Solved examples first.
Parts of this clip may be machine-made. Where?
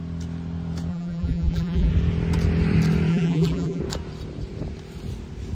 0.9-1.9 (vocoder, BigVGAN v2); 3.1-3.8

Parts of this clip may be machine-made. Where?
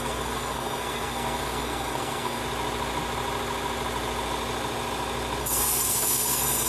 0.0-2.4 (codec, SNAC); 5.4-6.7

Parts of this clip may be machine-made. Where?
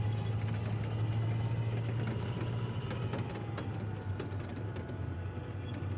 4.5-5.2 (vocoder, BigVGAN v2)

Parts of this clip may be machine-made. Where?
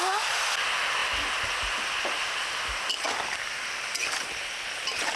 none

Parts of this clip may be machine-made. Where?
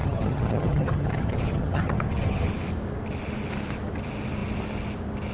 0.0-2.5 (vocoder, HiFi-GAN)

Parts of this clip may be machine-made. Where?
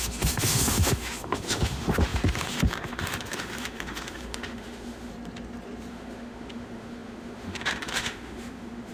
0.0-5.1 (autoencoder, DAC-VAE); 5.9-8.9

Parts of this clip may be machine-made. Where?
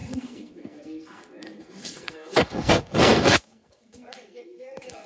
0.0-5.1 (codec, SNAC)